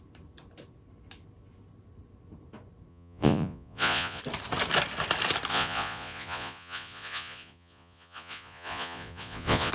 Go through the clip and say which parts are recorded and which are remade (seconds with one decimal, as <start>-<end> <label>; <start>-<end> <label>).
0.0-2.9 recorded; 2.9-4.2 remade; 4.2-5.5 recorded; 5.5-9.7 remade